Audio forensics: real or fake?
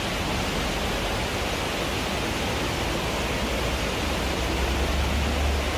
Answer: real